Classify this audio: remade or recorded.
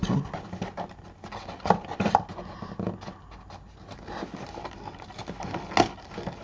recorded